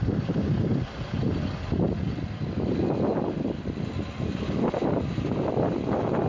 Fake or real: real